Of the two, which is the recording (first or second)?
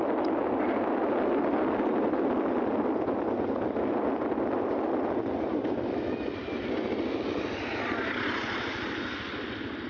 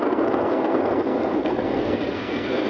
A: first